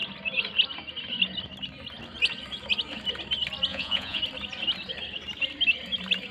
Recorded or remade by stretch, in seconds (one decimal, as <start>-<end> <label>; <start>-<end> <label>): 0.0-3.7 recorded; 3.7-4.2 remade; 4.2-6.3 recorded